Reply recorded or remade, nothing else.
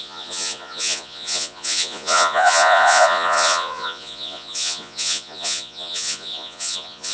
remade